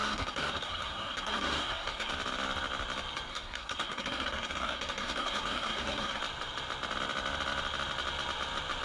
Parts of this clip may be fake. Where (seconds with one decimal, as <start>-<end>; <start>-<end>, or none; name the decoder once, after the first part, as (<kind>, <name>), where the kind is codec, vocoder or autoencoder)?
0.0-2.1 (codec, SNAC); 3.3-6.2